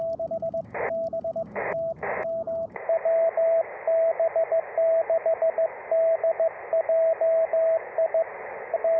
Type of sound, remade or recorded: recorded